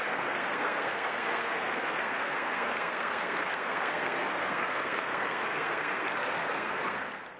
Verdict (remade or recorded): remade